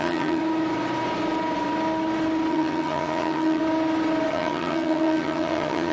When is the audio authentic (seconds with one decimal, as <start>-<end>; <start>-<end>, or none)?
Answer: 0.4-2.5; 3.6-4.3